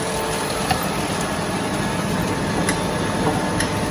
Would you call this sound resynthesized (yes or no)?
no